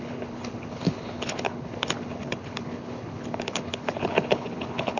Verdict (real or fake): fake